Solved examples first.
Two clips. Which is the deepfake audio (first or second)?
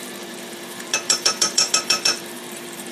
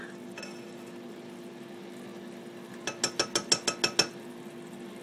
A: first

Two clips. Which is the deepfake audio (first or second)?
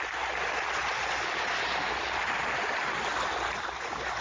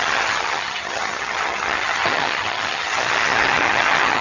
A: second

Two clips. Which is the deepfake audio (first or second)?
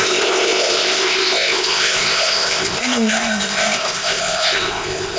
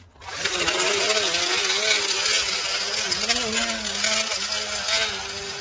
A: first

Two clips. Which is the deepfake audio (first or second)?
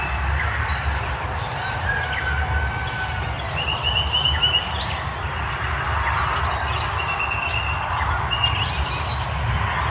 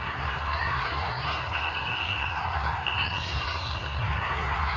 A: second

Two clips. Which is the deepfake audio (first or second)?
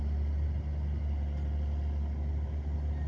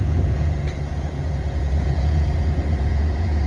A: second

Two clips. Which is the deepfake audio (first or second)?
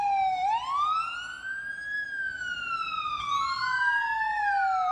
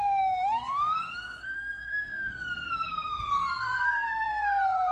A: second